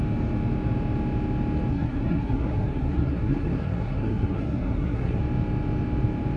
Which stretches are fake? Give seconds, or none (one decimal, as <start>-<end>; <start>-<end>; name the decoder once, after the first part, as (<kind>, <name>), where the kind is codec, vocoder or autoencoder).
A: 1.7-5.2 (codec, SNAC)